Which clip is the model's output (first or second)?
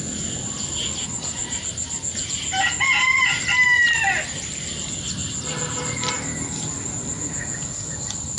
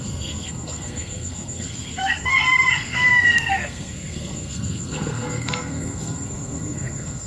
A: second